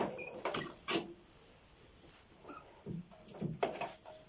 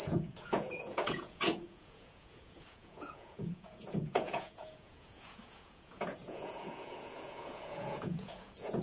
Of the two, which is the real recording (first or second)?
first